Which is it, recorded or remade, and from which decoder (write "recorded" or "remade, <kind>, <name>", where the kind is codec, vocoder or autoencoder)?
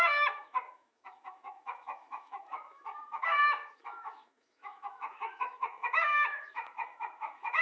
remade, autoencoder, DAC-VAE